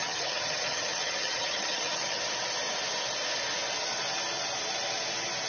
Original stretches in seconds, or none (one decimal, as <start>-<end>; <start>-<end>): 2.2-5.5